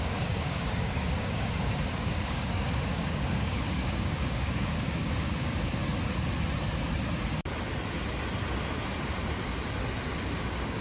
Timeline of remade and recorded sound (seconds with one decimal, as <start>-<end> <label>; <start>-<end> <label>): 0.0-5.8 remade; 5.8-10.3 recorded; 10.3-10.8 remade